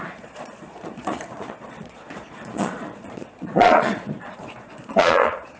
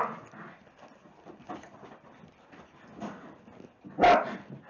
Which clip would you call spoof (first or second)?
first